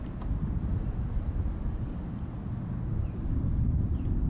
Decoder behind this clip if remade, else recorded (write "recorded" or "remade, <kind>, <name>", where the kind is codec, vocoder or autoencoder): remade, vocoder, BigVGAN v2